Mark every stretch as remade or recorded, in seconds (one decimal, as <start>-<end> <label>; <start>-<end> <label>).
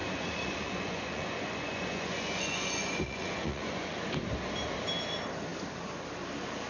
0.0-4.0 remade; 4.0-6.7 recorded